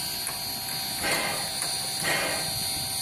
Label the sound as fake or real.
real